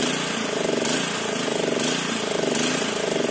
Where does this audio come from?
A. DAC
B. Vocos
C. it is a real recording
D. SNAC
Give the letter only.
C